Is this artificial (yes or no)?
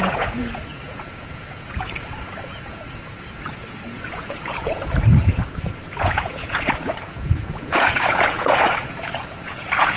yes